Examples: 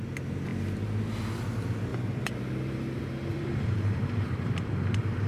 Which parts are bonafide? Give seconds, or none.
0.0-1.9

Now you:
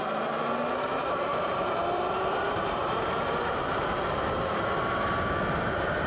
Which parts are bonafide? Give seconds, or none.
0.0-0.9; 4.6-6.1